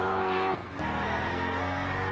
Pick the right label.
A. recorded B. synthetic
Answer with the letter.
B